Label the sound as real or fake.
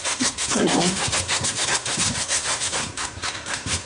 fake